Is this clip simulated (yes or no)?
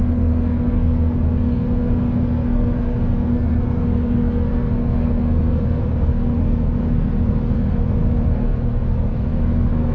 yes